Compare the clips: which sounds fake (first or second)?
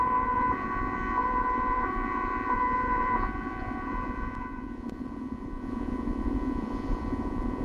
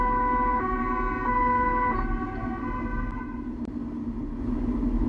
first